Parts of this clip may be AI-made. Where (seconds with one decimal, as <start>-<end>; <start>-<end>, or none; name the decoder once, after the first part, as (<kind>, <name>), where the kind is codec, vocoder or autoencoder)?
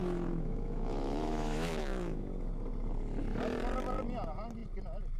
0.0-2.5 (autoencoder, DAC-VAE)